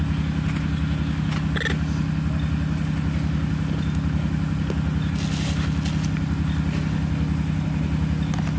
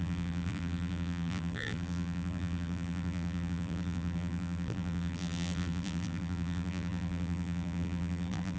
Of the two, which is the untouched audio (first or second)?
first